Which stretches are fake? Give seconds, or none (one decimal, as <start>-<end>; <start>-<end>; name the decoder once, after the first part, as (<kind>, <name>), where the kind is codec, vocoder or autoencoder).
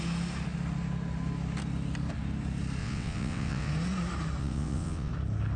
2.8-3.7 (vocoder, WaveNeXt); 4.4-5.1